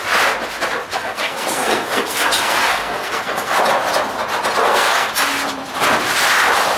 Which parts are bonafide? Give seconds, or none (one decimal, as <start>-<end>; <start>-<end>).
0.0-0.9; 3.6-4.6; 5.1-6.8